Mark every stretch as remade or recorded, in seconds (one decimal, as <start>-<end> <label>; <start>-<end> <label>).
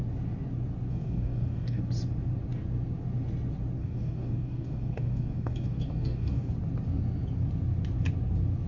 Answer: 0.0-0.9 recorded; 0.9-1.8 remade; 1.8-3.8 recorded; 3.8-6.5 remade; 6.5-8.7 recorded